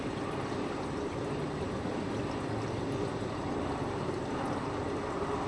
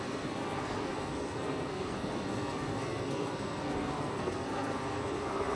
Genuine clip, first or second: first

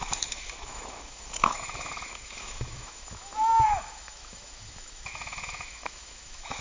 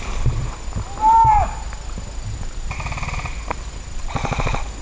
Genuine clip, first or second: second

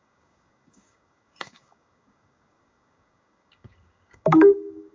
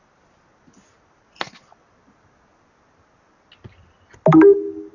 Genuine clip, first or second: second